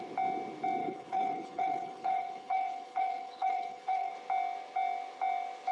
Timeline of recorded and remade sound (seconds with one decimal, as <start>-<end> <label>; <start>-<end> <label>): 0.0-0.8 recorded; 0.8-4.1 remade; 4.1-5.7 recorded